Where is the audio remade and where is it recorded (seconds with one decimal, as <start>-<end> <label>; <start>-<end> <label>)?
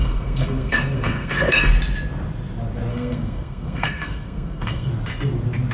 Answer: 0.0-1.7 remade; 1.7-2.9 recorded; 2.9-4.9 remade; 4.9-5.7 recorded